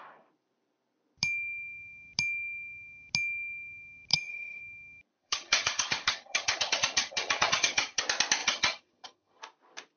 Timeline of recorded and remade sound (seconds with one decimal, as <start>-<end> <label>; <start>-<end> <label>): 0.0-4.1 recorded; 4.1-4.6 remade; 4.6-5.2 recorded; 5.2-8.0 remade; 8.0-8.4 recorded; 8.4-9.4 remade; 9.4-10.0 recorded

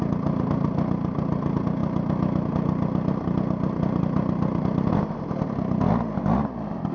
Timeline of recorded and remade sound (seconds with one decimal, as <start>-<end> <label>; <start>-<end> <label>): 0.0-6.9 recorded